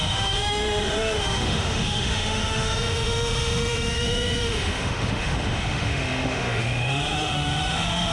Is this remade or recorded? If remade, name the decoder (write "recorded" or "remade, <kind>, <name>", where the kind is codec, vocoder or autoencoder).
remade, autoencoder, DAC-VAE